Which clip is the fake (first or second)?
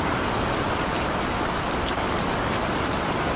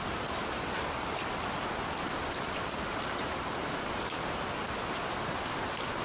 first